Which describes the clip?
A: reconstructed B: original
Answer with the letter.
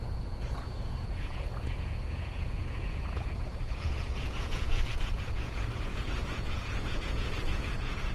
A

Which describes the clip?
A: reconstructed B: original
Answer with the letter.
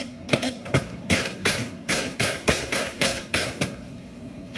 A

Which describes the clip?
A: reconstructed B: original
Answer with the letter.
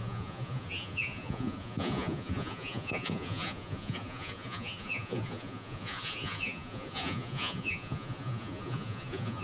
A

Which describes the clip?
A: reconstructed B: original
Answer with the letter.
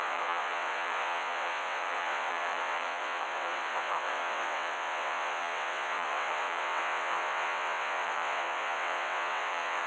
A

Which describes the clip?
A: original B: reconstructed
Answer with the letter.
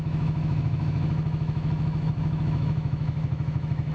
B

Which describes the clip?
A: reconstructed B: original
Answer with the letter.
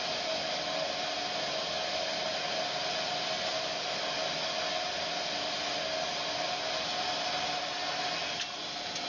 B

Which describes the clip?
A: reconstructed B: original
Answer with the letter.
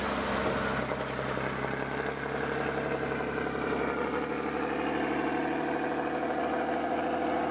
B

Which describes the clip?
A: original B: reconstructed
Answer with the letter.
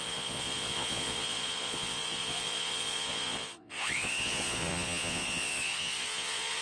B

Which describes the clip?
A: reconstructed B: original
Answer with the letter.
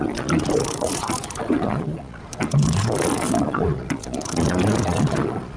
A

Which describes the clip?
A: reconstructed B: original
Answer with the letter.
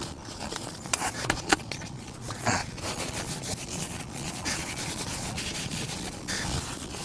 A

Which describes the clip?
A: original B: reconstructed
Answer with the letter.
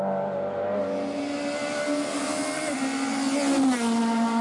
A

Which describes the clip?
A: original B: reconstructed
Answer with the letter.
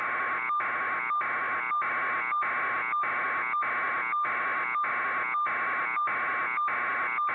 A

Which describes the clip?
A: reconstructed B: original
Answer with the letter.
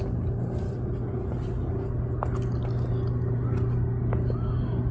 B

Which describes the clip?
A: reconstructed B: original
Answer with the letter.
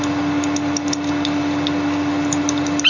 B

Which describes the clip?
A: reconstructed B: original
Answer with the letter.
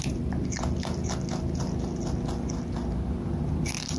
B